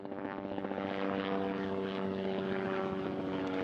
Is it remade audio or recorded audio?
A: remade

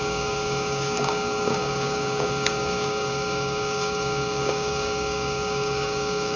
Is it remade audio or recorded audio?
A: remade